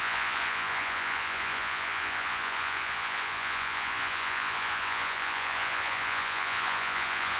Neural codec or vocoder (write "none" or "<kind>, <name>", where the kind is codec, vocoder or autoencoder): vocoder, Vocos